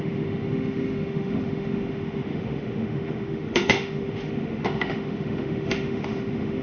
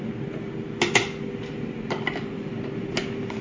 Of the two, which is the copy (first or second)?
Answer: first